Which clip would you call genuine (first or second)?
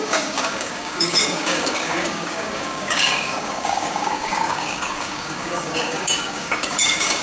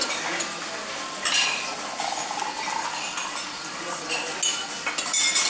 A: second